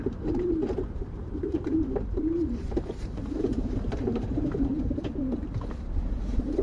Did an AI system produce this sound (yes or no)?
yes